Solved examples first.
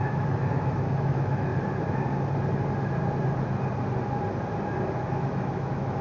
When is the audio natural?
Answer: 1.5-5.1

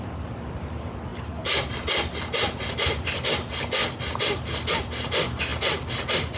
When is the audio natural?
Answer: 0.0-6.4